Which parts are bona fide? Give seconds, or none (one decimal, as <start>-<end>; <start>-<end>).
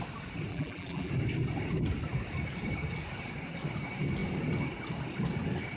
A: 0.0-0.5; 1.1-5.8